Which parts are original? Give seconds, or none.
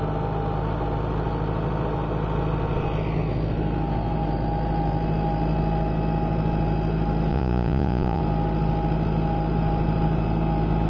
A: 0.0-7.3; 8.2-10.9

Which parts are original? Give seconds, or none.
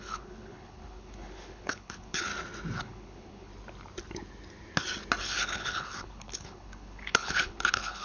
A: 2.3-2.8; 3.5-5.2